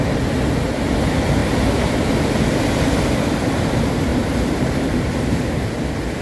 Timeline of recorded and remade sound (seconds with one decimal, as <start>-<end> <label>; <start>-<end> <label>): 0.0-1.4 recorded; 1.4-2.2 remade; 2.2-4.1 recorded; 4.1-5.8 remade; 5.8-6.2 recorded